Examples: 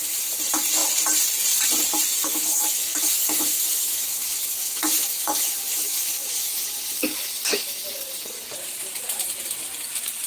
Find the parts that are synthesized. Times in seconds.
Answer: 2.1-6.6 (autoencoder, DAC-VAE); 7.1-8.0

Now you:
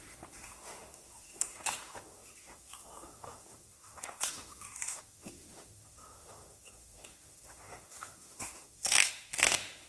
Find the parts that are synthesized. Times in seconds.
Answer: 0.0-9.9 (autoencoder, DAC-VAE)

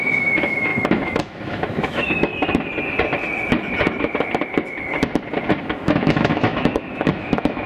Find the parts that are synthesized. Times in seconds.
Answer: 0.0-2.3 (autoencoder, DAC-VAE); 5.6-7.7

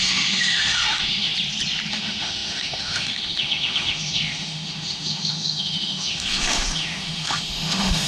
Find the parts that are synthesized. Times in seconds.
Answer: 0.0-1.3 (autoencoder, DAC-VAE); 1.9-8.1

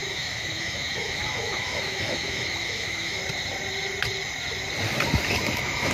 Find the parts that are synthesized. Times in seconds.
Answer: 0.0-3.2 (autoencoder, DAC-VAE); 5.5-5.9

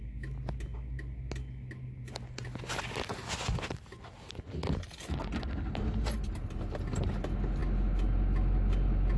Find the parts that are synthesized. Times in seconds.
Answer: none